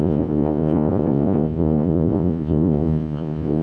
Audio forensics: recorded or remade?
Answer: remade